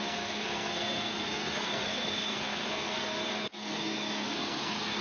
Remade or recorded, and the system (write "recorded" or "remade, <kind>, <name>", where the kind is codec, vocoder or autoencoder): remade, codec, SNAC